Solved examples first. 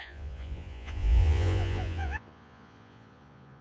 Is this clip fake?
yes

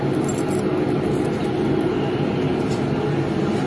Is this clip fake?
no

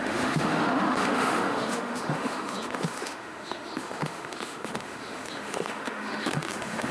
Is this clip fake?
yes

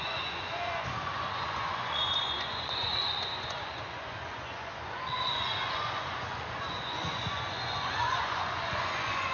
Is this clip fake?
yes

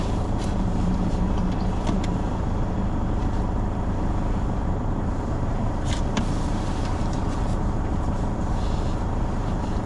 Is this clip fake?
yes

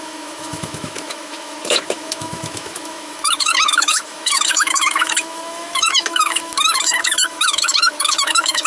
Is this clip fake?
yes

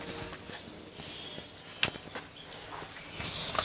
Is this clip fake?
no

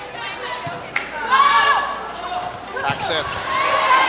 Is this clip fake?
no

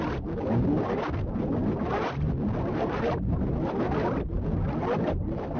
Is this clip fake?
no